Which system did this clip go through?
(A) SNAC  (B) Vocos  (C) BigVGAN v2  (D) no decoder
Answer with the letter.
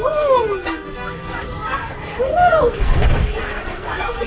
A